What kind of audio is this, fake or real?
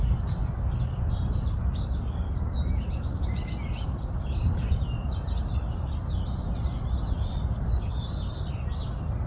real